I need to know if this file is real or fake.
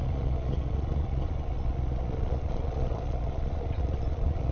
fake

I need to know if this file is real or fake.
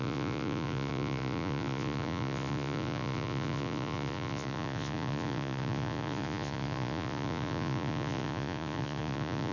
fake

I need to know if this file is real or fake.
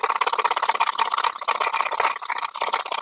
real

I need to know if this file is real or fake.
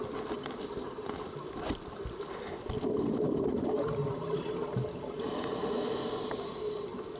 real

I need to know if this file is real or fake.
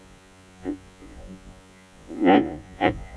fake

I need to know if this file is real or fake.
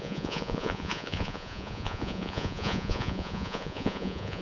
fake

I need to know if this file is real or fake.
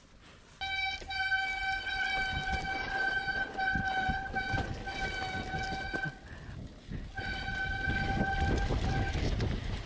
real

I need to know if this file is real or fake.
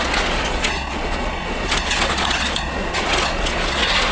fake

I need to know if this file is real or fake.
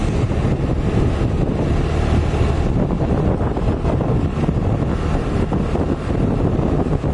real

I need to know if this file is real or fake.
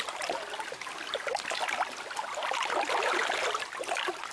real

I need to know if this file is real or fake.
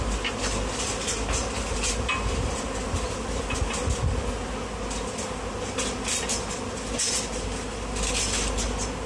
real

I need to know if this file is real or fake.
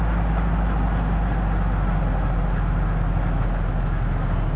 real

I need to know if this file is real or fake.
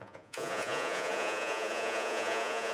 fake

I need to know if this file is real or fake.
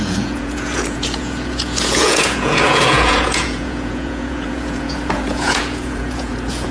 fake